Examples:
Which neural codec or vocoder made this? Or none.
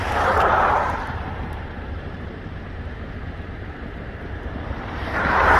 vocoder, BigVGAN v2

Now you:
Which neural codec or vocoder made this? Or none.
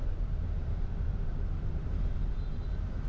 none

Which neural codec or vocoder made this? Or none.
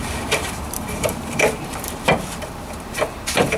vocoder, BigVGAN v2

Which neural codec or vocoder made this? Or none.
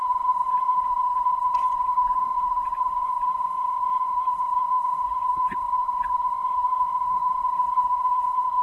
codec, HILCodec